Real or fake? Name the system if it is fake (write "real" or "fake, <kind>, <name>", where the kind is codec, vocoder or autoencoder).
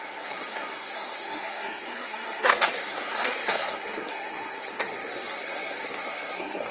fake, codec, SNAC